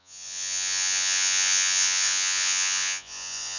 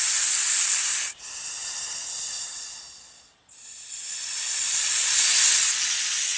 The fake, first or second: first